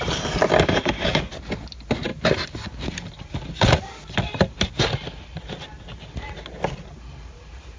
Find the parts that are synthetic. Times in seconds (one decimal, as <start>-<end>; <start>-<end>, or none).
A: none